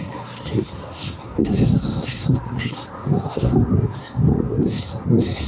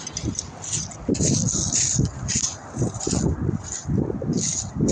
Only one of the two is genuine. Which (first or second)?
second